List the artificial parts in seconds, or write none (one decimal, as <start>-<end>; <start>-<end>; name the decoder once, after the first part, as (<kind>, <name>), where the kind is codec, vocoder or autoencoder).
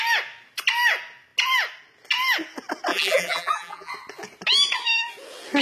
2.9-3.9 (vocoder, BigVGAN v2)